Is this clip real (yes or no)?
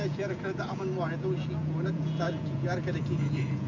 no